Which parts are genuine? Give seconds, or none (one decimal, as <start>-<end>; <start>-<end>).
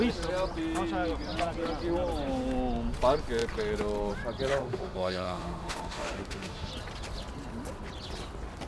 0.0-4.6; 6.7-8.7